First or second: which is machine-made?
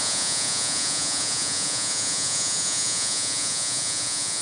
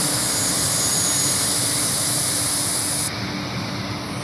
first